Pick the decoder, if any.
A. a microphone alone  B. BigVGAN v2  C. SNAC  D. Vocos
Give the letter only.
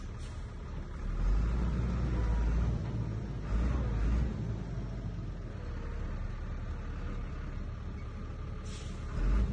A